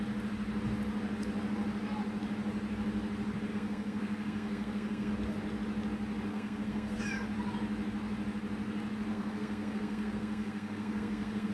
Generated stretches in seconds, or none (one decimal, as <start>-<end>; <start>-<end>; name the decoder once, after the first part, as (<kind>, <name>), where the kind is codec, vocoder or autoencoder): 3.5-5.1 (codec, SNAC); 6.3-7.0; 9.1-11.5